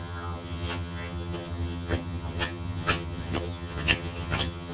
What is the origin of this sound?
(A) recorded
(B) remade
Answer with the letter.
B